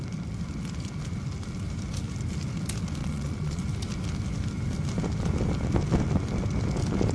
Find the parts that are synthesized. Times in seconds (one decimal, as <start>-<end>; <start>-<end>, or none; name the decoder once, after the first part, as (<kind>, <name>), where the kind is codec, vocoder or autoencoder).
3.0-3.6 (vocoder, Vocos)